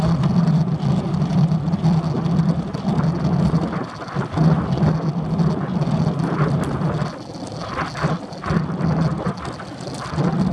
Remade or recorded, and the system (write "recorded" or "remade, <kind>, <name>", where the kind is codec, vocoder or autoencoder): recorded